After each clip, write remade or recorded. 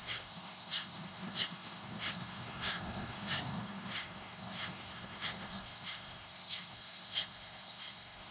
remade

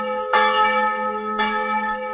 remade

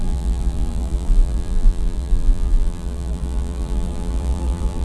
remade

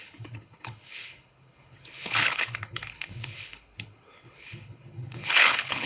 remade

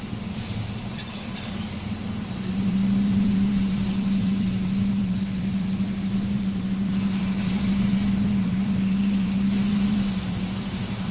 remade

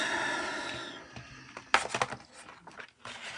recorded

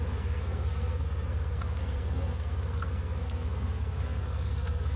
remade